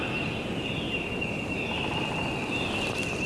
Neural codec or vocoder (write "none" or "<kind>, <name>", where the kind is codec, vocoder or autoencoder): none